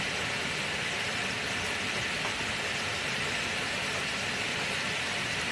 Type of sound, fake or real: real